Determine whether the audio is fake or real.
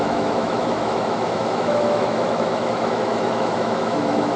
fake